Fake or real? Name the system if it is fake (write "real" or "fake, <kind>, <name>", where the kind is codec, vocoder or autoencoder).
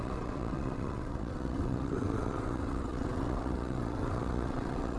fake, vocoder, WaveNeXt